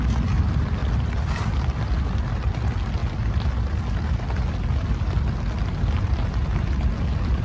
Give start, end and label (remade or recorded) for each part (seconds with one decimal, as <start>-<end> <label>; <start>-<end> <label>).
0.0-7.4 recorded